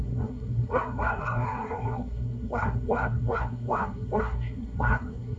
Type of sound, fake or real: fake